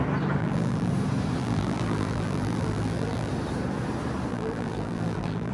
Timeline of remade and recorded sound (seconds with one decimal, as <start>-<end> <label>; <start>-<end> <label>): 0.0-0.4 recorded; 0.4-0.9 remade; 0.9-1.4 recorded; 1.4-3.3 remade; 3.3-4.3 recorded; 4.3-5.5 remade